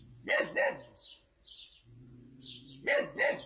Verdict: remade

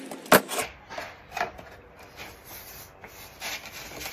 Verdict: recorded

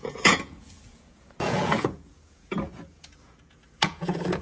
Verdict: remade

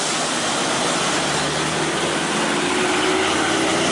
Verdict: recorded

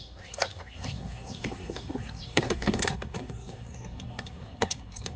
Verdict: remade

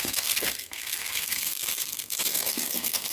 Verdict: remade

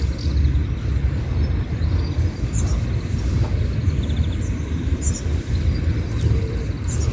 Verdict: recorded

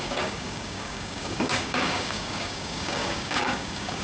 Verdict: remade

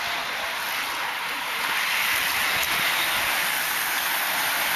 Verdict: recorded